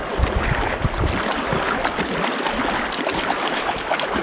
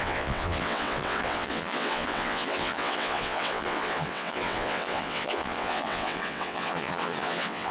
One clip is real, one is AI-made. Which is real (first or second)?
first